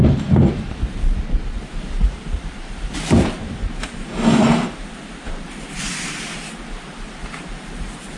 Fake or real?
fake